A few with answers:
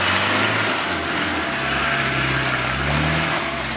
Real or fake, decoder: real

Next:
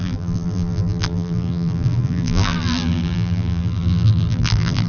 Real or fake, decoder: fake, vocoder, BigVGAN v2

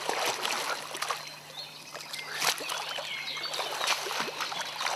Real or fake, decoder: real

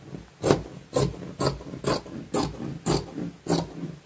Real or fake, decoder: real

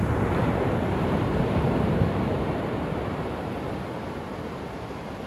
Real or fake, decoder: fake, vocoder, BigVGAN v2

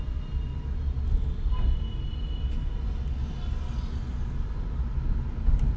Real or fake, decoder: real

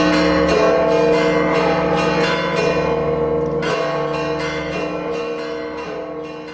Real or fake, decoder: real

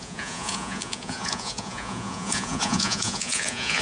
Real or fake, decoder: fake, vocoder, Vocos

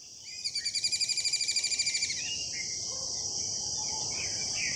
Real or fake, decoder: fake, vocoder, BigVGAN v2